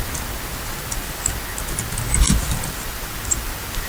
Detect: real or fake real